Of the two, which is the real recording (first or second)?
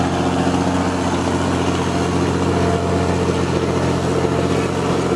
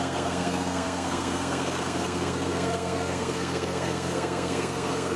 first